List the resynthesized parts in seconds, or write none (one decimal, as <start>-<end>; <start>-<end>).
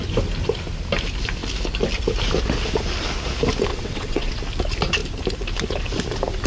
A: 3.7-4.3